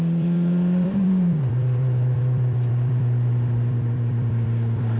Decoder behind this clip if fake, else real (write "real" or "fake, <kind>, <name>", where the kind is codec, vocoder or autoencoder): fake, vocoder, BigVGAN v2